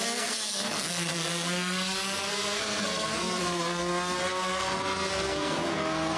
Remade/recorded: remade